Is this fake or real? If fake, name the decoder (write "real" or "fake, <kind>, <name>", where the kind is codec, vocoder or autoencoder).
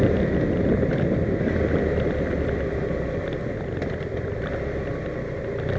real